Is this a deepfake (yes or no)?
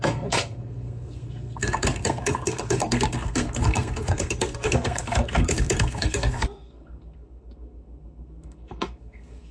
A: yes